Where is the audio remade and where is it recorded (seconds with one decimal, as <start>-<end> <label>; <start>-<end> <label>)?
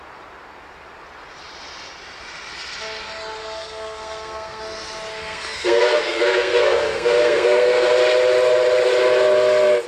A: 0.0-3.4 recorded; 3.4-4.6 remade; 4.6-5.2 recorded; 5.2-7.9 remade; 7.9-9.9 recorded